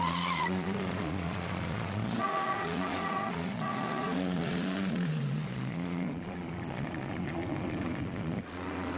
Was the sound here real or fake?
fake